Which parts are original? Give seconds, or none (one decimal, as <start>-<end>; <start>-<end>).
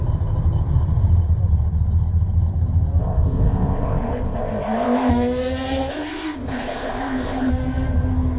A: 0.0-3.0; 5.1-5.9; 7.5-8.4